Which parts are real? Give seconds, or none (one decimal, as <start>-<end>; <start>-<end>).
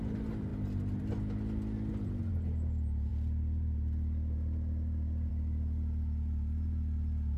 0.0-3.1; 5.3-7.4